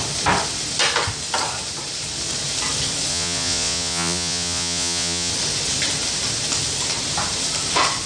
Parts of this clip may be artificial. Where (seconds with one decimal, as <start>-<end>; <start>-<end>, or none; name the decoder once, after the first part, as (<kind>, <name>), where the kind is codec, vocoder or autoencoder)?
3.1-5.3 (vocoder, Vocos)